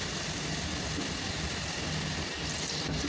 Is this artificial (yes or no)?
no